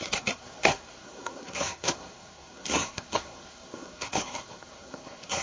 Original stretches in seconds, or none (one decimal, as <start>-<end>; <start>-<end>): none